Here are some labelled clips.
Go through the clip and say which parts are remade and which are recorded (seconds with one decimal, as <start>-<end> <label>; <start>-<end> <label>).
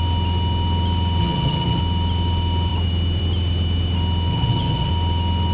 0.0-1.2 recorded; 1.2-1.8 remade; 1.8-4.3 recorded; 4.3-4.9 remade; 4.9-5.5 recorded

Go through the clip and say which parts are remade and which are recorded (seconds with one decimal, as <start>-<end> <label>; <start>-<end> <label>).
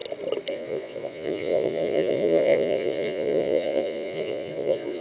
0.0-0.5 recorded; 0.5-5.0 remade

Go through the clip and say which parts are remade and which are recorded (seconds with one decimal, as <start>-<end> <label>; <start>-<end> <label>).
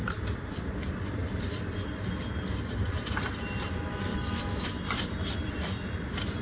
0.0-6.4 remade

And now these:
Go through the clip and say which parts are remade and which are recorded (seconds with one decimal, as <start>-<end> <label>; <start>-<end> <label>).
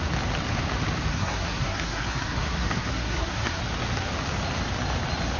0.0-1.1 recorded; 1.1-3.6 remade; 3.6-5.4 recorded